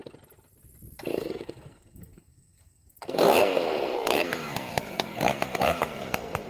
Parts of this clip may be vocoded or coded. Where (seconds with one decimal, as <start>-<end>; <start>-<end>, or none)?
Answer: 1.1-6.5